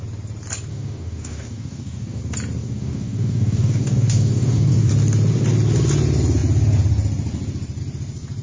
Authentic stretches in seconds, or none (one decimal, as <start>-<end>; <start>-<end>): 0.0-0.7; 2.2-2.6; 4.9-8.4